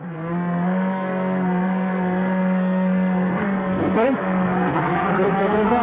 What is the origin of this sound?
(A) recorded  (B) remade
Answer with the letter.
B